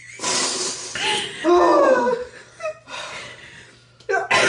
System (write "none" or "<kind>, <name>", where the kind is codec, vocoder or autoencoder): none